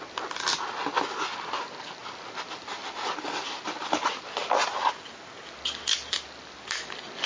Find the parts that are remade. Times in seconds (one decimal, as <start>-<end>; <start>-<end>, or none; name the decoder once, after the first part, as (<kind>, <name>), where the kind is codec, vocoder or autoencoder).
none